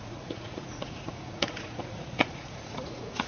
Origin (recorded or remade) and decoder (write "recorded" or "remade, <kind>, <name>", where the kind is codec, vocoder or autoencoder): remade, vocoder, Vocos